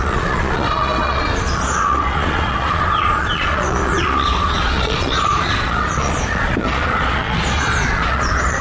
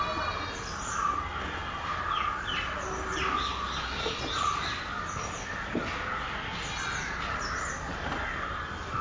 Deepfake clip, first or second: first